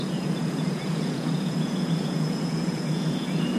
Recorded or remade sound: remade